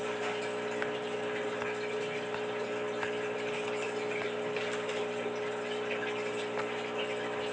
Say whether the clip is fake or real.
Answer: fake